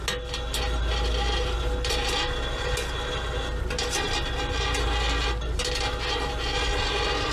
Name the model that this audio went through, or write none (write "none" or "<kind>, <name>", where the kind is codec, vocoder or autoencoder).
none